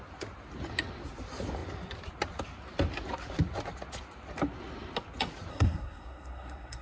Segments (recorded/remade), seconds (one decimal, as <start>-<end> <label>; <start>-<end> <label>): 0.0-5.5 recorded; 5.5-6.8 remade